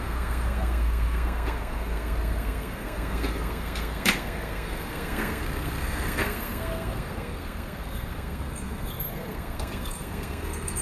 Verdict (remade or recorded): remade